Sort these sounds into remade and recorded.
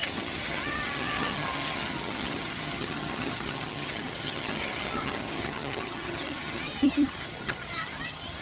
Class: remade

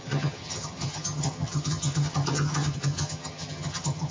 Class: remade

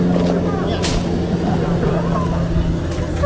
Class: recorded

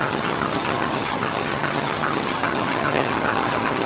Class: remade